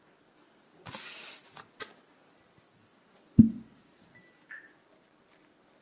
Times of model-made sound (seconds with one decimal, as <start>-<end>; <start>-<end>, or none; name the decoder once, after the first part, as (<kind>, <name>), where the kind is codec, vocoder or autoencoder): none

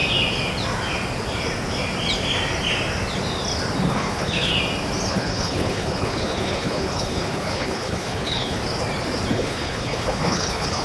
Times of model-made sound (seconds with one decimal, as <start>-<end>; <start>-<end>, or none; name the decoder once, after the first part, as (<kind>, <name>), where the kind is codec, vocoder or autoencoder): 3.9-4.5 (codec, HILCodec); 5.1-8.6; 9.3-10.8

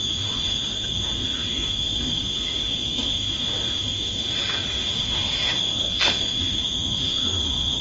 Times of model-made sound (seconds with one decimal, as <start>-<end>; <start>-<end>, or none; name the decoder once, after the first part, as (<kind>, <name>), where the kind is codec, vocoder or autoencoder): 0.0-7.8 (autoencoder, DAC-VAE)

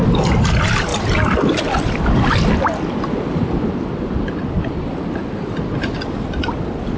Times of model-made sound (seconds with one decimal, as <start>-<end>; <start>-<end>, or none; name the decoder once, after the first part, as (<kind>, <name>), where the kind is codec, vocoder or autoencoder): none

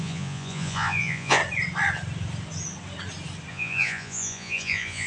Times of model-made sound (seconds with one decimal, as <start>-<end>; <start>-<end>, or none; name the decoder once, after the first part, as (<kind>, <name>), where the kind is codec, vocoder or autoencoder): 0.0-1.4 (vocoder, Vocos); 3.5-5.1

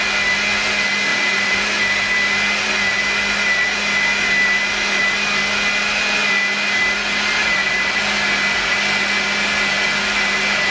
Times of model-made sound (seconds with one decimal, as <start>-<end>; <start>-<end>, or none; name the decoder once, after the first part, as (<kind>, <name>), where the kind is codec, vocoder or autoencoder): 1.1-1.8 (vocoder, BigVGAN v2); 7.4-8.0

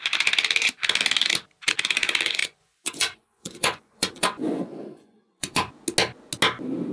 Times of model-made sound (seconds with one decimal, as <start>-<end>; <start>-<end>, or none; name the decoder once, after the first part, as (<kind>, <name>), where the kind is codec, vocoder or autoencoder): 2.4-5.7 (vocoder, Vocos)

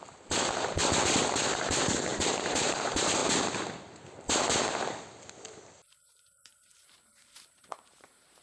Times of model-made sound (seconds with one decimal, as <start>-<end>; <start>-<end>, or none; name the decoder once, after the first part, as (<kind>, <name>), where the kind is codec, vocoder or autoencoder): 0.0-0.8 (vocoder, BigVGAN v2); 1.3-3.2; 6.0-8.4